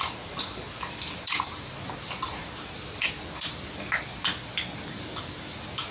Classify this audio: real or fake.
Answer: real